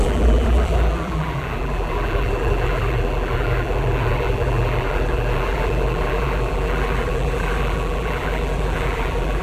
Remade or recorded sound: remade